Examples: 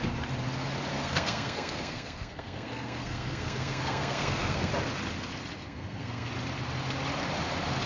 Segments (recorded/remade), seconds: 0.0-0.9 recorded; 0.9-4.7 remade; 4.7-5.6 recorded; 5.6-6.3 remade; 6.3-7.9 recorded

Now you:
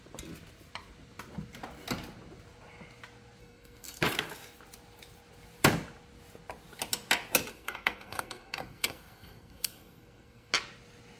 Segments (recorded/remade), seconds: 0.0-3.4 recorded; 3.4-4.0 remade; 4.0-7.5 recorded; 7.5-10.5 remade; 10.5-11.2 recorded

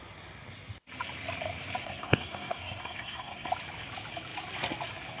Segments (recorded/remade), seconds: 0.0-1.8 recorded; 1.8-3.5 remade; 3.5-5.2 recorded

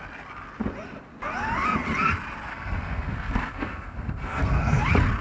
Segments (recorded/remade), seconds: 0.0-2.5 recorded; 2.5-4.8 remade; 4.8-5.2 recorded

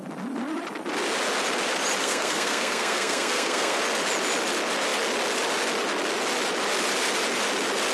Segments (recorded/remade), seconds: 0.0-2.0 recorded; 2.0-3.8 remade; 3.8-7.9 recorded